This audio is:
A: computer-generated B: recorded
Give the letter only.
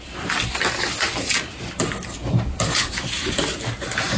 B